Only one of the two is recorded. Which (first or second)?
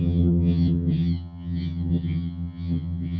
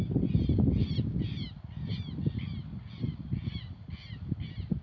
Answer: second